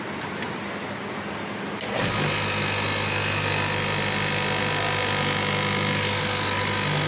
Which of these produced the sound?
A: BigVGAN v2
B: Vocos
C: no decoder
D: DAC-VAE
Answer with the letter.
C